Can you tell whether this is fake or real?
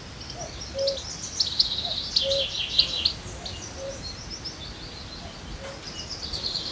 real